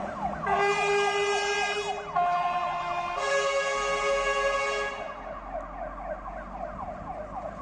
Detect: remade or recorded recorded